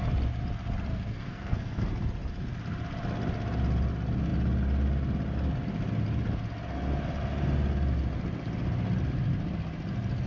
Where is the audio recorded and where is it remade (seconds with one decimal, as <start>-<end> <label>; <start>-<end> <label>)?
0.0-0.9 recorded; 0.9-1.9 remade; 1.9-10.3 recorded